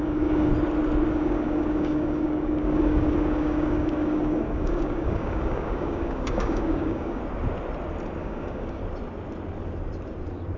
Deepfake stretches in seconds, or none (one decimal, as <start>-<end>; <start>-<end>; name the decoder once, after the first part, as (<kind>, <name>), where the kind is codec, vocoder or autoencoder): 0.0-0.5 (codec, DAC); 1.1-7.2; 8.2-8.8